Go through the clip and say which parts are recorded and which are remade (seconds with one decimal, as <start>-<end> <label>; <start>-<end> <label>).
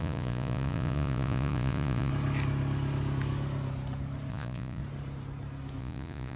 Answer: 0.0-2.1 remade; 2.1-4.3 recorded; 4.3-4.8 remade; 4.8-5.8 recorded; 5.8-6.4 remade